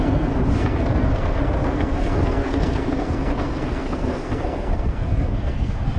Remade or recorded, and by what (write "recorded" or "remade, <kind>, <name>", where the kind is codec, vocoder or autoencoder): remade, codec, SNAC